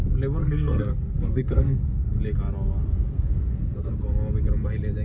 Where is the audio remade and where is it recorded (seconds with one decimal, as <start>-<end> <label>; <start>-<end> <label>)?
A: 0.0-0.4 recorded; 0.4-2.2 remade; 2.2-2.9 recorded; 2.9-3.9 remade; 3.9-5.0 recorded